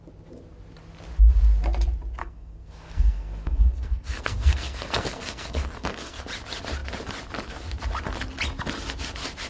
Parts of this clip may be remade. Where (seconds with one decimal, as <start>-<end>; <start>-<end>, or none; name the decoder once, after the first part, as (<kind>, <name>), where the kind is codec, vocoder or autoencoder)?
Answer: 2.2-6.2 (codec, SNAC)